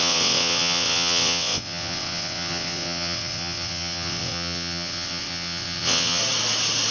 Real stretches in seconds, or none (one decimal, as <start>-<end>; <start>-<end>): 6.2-6.9